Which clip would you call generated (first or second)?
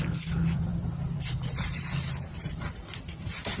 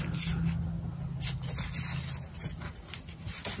first